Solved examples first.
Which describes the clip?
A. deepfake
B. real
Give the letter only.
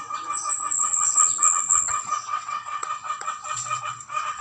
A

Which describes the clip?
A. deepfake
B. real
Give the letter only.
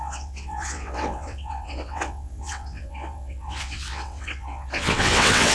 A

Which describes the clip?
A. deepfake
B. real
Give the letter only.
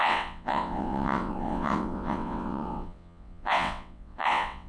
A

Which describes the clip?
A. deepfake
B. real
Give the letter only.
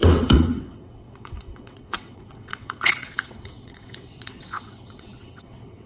A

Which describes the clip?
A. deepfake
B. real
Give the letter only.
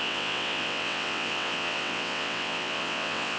A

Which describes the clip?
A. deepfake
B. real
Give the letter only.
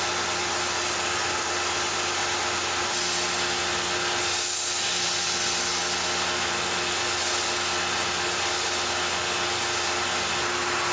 B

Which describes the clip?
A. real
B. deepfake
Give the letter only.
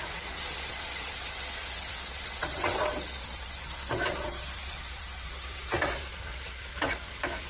B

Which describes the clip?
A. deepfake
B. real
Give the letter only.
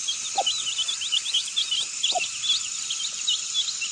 B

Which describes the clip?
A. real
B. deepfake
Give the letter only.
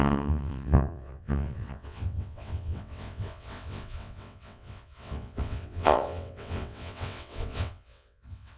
B